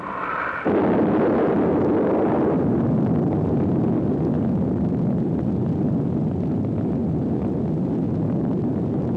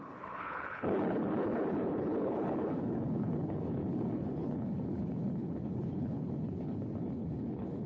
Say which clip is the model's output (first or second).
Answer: second